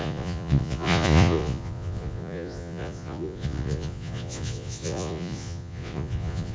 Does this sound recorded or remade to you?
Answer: remade